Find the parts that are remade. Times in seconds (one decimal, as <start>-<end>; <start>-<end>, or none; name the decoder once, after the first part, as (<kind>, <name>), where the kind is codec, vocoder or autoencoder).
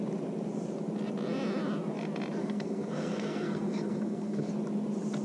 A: 2.4-4.5 (codec, SNAC)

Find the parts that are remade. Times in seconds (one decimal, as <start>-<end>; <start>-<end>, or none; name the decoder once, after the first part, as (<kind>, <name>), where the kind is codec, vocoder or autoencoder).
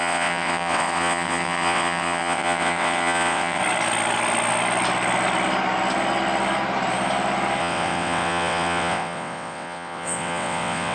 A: 0.0-3.6 (vocoder, WaveNeXt); 7.6-10.9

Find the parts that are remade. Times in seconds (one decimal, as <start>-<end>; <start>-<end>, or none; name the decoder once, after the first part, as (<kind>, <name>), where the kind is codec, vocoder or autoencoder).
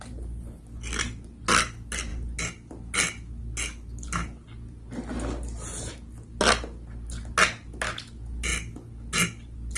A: none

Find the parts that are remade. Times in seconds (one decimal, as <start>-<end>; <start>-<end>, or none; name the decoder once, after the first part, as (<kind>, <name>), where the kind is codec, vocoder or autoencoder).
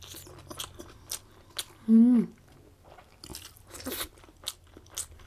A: none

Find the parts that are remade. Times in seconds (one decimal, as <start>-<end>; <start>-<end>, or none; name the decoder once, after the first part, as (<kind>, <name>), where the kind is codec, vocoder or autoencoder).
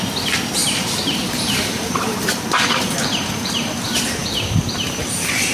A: 0.6-3.7 (vocoder, BigVGAN v2)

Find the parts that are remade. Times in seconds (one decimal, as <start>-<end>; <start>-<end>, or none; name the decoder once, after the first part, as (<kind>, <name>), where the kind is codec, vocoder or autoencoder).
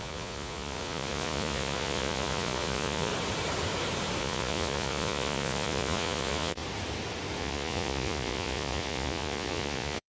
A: 0.0-3.1 (vocoder, Vocos); 4.2-6.6; 7.4-10.1